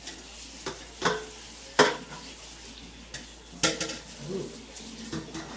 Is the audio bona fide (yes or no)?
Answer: yes